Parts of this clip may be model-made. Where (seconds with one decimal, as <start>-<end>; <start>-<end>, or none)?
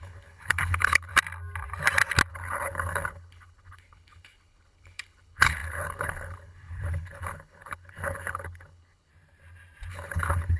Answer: 0.0-1.1; 2.3-9.1; 9.9-10.6